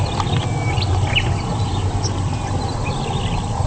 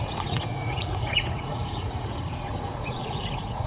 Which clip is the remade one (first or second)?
second